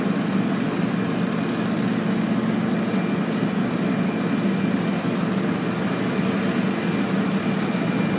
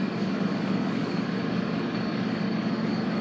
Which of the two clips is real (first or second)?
first